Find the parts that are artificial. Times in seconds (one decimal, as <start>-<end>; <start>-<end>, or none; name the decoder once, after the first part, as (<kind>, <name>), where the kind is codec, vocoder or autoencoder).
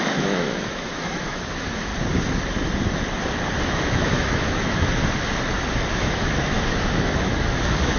0.0-1.9 (autoencoder, DAC-VAE); 3.6-5.0; 5.9-8.0